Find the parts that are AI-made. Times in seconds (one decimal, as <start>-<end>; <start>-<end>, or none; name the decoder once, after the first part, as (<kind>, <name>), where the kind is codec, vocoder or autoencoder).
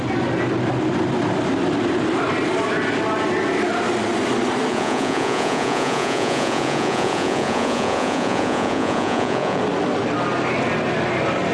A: 4.7-9.6 (vocoder, Vocos)